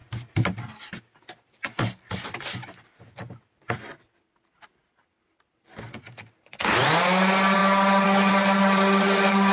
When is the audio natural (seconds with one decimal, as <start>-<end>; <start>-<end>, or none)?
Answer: 0.0-9.5